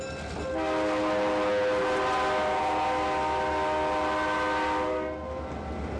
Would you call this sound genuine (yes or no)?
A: yes